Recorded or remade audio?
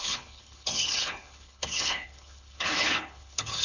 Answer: remade